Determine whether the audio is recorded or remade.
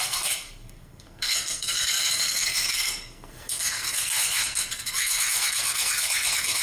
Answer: remade